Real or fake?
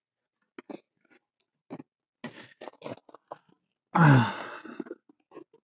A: real